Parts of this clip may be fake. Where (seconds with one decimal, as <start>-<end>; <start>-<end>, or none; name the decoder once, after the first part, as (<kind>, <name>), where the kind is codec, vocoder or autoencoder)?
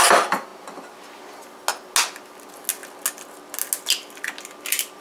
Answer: none